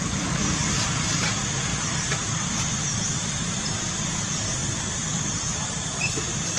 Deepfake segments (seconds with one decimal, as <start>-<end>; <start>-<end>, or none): 0.0-4.6; 5.2-6.6